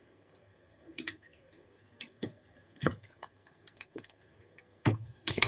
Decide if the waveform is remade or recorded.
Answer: remade